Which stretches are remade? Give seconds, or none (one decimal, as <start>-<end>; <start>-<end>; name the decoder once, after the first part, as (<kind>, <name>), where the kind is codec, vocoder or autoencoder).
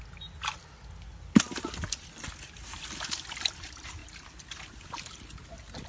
none